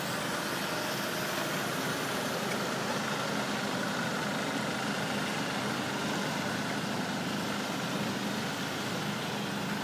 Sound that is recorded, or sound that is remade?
recorded